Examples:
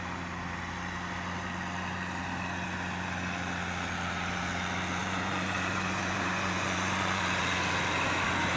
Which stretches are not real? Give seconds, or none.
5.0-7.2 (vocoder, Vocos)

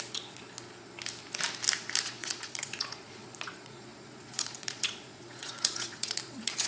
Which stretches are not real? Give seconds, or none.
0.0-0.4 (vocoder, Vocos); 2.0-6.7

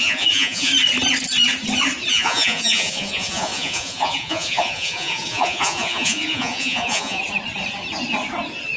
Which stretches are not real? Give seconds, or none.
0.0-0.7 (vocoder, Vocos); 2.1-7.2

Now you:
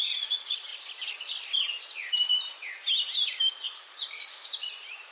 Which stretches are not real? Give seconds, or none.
0.0-0.7 (vocoder, Vocos); 3.5-5.1